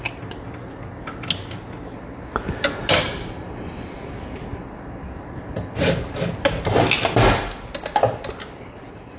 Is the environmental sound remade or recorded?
recorded